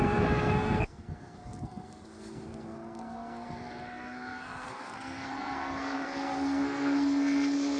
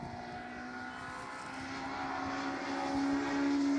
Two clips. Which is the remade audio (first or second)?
first